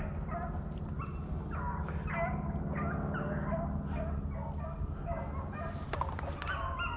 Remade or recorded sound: recorded